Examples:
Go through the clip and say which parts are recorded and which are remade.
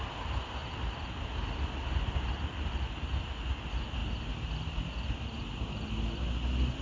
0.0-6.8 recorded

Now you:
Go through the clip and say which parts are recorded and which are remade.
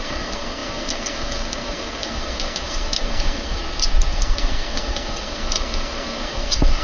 0.0-3.6 remade; 3.6-4.1 recorded; 4.1-6.8 remade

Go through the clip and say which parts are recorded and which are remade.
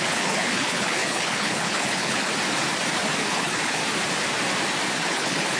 0.0-2.3 remade; 2.3-3.3 recorded; 3.3-3.8 remade; 3.8-5.0 recorded; 5.0-5.6 remade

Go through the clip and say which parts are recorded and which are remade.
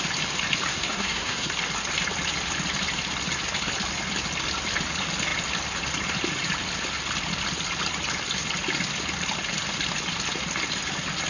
0.0-0.7 recorded; 0.7-1.5 remade; 1.5-11.3 recorded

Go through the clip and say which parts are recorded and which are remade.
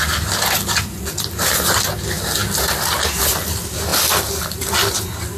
0.0-5.4 recorded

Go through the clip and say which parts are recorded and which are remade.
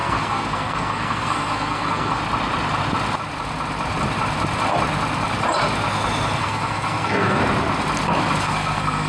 0.0-2.2 remade; 2.2-6.4 recorded; 6.4-7.4 remade; 7.4-8.4 recorded; 8.4-9.1 remade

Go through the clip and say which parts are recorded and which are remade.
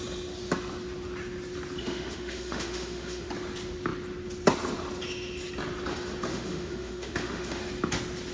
0.0-1.8 recorded; 1.8-3.3 remade; 3.3-6.3 recorded; 6.3-7.6 remade; 7.6-8.3 recorded